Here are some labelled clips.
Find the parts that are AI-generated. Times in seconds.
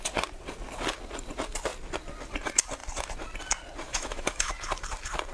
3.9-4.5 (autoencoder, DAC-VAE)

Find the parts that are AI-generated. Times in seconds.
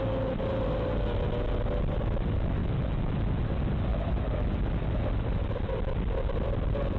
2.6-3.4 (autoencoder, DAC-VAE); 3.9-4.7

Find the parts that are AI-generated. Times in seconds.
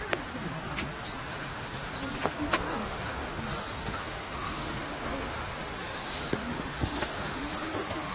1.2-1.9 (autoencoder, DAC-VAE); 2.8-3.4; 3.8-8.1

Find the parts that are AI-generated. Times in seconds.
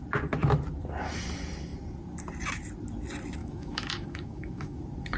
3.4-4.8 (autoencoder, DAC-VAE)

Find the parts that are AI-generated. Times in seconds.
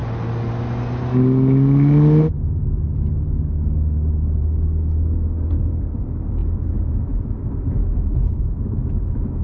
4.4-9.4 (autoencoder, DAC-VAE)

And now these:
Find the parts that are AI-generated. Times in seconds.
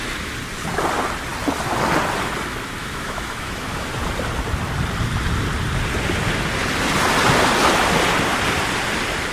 2.8-3.9 (autoencoder, DAC-VAE)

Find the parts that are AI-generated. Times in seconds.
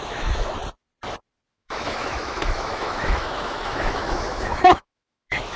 0.0-0.6 (autoencoder, DAC-VAE); 1.5-5.6